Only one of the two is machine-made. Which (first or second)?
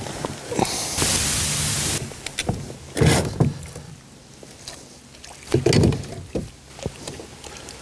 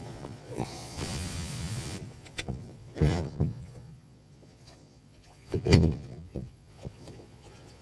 second